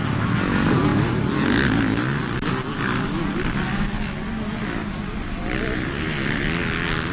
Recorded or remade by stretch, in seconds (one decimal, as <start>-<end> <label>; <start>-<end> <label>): 0.0-0.9 recorded; 0.9-2.5 remade; 2.5-4.8 recorded; 4.8-5.9 remade; 5.9-7.1 recorded